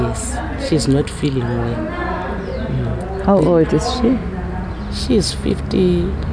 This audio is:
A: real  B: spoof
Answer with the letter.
A